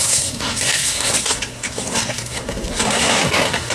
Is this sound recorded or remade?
remade